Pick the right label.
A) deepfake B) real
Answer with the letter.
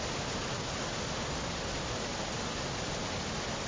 B